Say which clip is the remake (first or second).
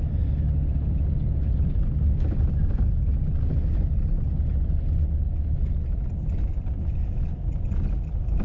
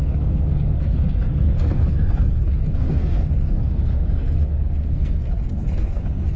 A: second